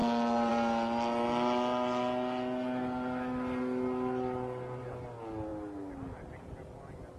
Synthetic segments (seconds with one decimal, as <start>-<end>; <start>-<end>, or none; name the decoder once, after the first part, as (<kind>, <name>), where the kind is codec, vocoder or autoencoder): none